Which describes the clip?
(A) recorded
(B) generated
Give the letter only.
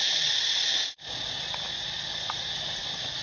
A